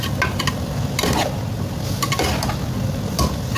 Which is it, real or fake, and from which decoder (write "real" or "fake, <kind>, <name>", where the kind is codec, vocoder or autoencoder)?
real